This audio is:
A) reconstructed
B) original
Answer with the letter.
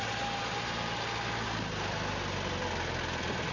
B